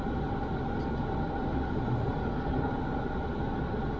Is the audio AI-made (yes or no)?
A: no